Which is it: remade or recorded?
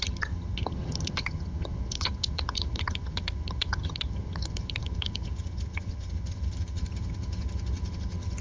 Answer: remade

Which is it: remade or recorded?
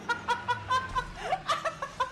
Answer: recorded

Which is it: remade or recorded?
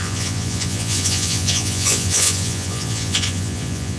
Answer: remade